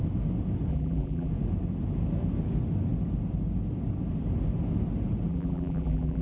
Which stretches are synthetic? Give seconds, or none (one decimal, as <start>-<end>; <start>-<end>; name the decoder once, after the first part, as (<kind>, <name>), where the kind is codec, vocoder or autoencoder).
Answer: 0.7-1.3 (vocoder, BigVGAN v2); 5.3-6.2

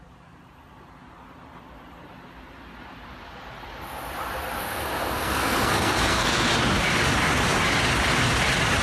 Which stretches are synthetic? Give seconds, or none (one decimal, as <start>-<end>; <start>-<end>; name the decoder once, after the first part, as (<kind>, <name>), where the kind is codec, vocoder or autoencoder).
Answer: 4.6-6.5 (codec, SNAC)

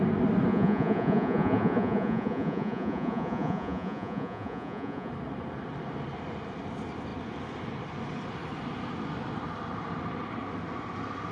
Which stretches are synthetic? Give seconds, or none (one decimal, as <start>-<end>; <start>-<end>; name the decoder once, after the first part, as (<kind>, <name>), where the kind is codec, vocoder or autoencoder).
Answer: 0.5-5.1 (vocoder, Vocos)

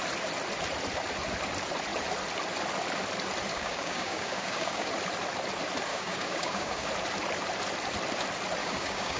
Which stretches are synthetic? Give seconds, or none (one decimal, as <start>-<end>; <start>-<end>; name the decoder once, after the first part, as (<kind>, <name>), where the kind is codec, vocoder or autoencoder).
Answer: 3.5-4.9 (codec, DAC); 5.9-6.9; 8.6-9.2

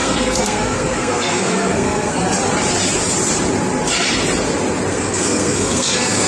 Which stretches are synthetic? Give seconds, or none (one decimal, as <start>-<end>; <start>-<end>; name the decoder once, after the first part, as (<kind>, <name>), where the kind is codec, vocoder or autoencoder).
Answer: 0.0-2.2 (codec, SNAC); 4.9-6.3

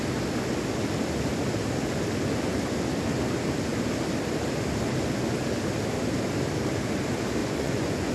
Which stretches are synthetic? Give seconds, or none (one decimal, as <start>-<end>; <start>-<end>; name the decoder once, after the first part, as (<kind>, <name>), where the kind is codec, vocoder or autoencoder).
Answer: 7.4-8.1 (vocoder, Vocos)

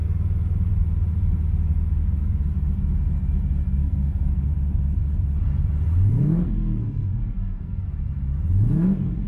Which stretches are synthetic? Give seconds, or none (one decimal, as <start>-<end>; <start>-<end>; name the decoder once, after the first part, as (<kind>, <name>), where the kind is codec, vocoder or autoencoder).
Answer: 3.8-4.5 (codec, SNAC); 6.1-7.8

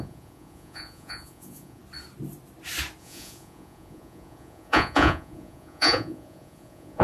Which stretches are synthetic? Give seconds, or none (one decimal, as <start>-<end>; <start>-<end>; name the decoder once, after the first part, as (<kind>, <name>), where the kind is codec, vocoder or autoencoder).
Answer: 0.0-1.8 (vocoder, Vocos); 3.0-7.0